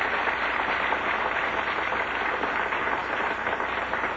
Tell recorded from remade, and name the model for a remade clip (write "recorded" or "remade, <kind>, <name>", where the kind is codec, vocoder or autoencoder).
recorded